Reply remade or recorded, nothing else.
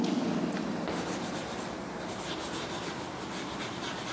recorded